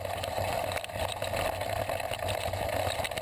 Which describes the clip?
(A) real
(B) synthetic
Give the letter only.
A